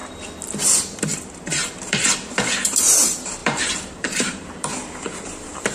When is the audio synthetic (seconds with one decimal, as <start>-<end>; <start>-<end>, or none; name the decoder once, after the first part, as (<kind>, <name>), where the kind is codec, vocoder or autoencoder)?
0.6-5.7 (vocoder, BigVGAN v2)